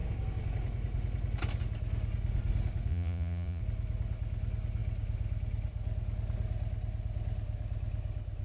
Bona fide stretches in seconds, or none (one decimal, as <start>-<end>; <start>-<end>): 0.0-2.9; 3.6-8.4